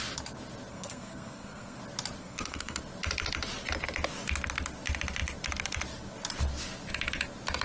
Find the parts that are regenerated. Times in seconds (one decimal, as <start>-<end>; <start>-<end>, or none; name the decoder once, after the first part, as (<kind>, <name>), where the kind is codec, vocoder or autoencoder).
0.7-1.8 (codec, SNAC); 2.2-2.8